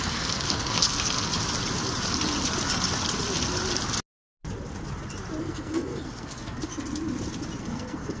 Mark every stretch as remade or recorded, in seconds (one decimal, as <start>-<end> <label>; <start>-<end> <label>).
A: 0.0-1.3 remade; 1.3-5.4 recorded; 5.4-6.7 remade; 6.7-7.6 recorded; 7.6-8.2 remade